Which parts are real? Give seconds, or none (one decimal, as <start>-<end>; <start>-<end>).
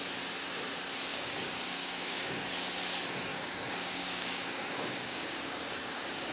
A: 0.0-1.1; 2.3-3.3